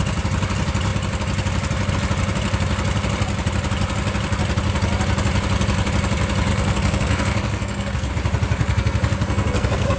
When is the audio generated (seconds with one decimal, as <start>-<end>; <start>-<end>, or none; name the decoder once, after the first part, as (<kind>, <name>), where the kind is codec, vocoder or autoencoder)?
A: 6.5-8.1 (codec, SNAC); 8.6-10.0